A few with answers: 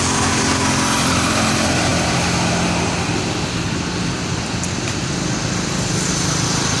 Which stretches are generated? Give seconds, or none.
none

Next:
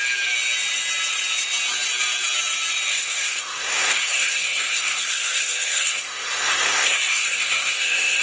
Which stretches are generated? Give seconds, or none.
2.9-8.2